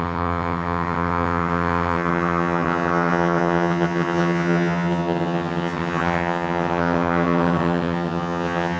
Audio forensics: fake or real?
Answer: fake